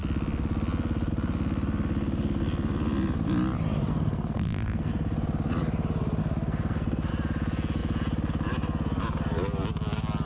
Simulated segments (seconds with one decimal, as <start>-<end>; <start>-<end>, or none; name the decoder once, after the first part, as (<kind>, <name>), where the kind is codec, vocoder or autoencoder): 3.9-4.9 (codec, SNAC); 6.2-7.1